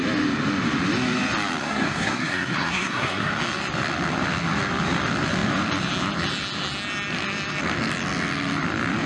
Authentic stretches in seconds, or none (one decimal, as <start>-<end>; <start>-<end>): 0.0-1.6; 3.3-9.1